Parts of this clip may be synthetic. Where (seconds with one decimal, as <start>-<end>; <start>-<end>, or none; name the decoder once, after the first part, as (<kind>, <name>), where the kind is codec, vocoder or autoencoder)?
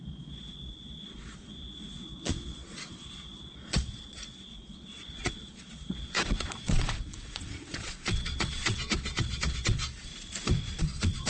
0.0-10.1 (vocoder, Vocos); 10.8-11.3